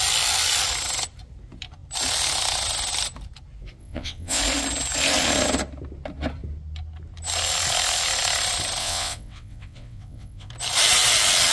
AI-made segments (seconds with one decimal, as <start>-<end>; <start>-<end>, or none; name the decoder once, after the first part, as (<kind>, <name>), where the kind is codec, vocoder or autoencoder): 3.8-4.4 (vocoder, WaveNeXt); 8.8-10.5